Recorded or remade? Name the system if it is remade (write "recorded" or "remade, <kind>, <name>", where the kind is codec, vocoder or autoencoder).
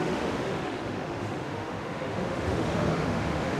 remade, autoencoder, DAC-VAE